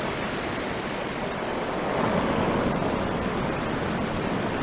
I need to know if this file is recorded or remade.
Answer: recorded